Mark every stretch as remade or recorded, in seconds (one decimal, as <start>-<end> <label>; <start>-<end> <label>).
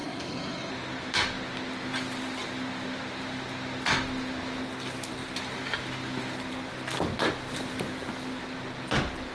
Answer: 0.0-0.7 remade; 0.7-9.3 recorded